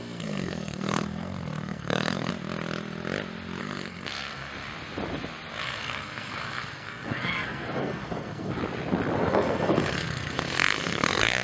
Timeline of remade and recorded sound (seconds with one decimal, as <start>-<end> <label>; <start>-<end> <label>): 0.0-2.3 remade; 2.3-3.6 recorded; 3.6-4.5 remade; 4.5-5.6 recorded; 5.6-8.6 remade; 8.6-9.2 recorded; 9.2-11.4 remade